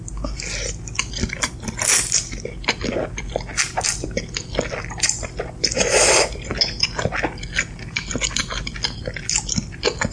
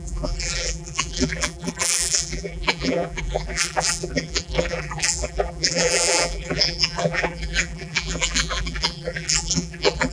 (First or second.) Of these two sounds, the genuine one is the first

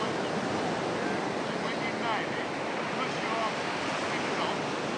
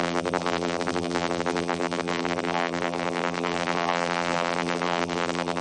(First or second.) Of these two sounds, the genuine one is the first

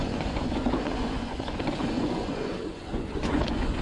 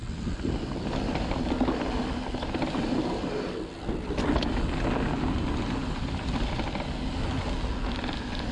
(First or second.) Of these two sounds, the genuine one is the second